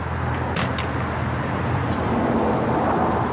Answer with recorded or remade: recorded